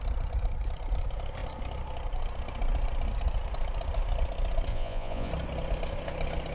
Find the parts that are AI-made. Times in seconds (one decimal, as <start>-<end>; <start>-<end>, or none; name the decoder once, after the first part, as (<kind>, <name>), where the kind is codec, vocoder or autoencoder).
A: 4.7-5.3 (vocoder, Vocos)